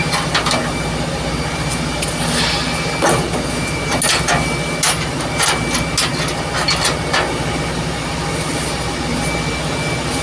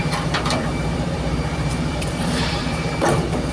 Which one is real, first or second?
first